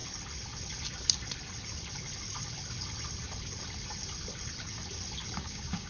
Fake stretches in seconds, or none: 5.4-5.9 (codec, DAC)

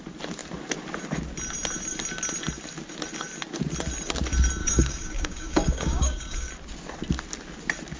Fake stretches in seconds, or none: 4.6-6.5 (codec, DAC)

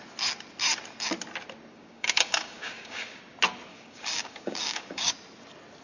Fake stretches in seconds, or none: 1.7-3.2 (codec, DAC); 3.7-5.1

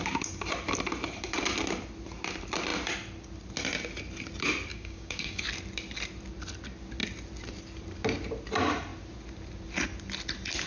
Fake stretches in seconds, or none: 4.7-5.4 (codec, DAC)

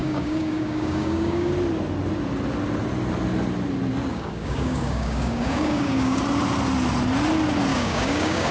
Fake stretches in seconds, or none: 0.0-1.5 (codec, DAC); 4.1-6.2; 7.7-8.5

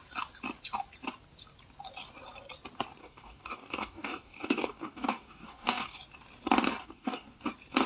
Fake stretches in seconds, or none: 3.0-6.0 (codec, DAC); 6.8-7.4

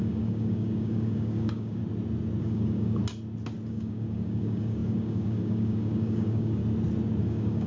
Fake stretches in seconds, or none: 0.0-1.8 (codec, DAC); 2.4-3.0; 3.7-6.6; 7.2-7.7